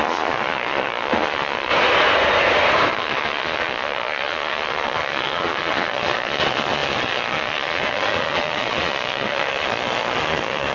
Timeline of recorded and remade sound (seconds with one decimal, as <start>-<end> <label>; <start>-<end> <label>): 0.0-1.7 remade; 1.7-2.9 recorded; 2.9-10.7 remade